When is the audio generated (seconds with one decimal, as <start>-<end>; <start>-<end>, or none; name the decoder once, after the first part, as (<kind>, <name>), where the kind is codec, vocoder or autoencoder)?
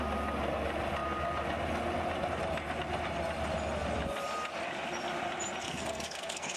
5.6-6.6 (codec, SNAC)